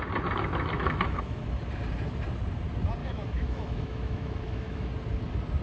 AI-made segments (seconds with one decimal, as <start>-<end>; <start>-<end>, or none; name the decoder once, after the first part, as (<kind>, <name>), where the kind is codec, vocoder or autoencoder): 0.8-1.4 (autoencoder, DAC-VAE); 3.0-4.9